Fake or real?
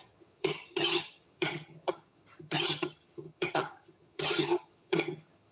fake